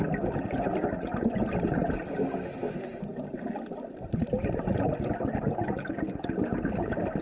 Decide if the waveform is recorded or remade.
recorded